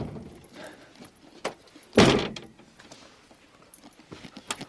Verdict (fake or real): real